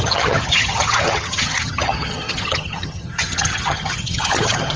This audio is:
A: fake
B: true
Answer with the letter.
A